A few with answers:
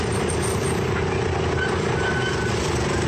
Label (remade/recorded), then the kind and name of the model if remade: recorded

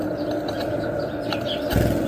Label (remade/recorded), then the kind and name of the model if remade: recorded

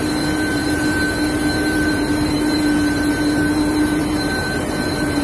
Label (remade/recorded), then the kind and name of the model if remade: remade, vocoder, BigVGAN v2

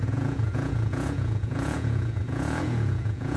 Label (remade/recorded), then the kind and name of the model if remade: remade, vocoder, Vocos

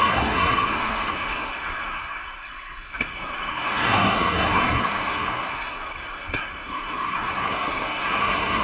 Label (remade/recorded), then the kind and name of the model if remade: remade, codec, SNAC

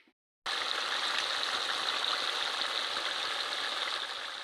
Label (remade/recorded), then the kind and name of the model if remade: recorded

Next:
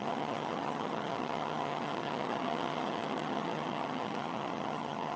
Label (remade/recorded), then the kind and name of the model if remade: remade, vocoder, HiFi-GAN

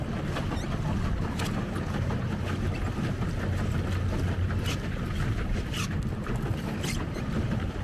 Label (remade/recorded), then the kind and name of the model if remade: recorded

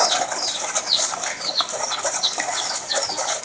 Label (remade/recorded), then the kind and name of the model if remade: remade, codec, DAC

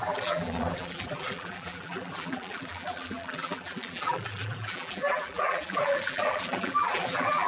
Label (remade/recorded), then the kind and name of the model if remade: remade, vocoder, BigVGAN v2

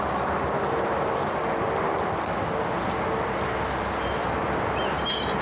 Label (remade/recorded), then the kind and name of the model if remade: recorded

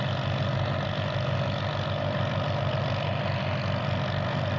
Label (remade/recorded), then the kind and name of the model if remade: recorded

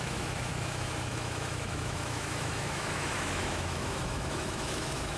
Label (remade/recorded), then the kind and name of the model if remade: remade, autoencoder, DAC-VAE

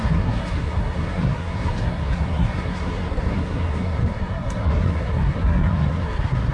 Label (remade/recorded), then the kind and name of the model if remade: remade, codec, SNAC